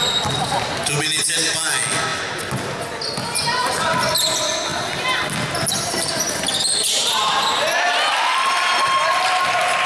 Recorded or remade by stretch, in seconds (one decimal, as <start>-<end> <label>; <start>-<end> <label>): 0.0-9.9 recorded